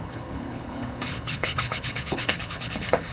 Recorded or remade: remade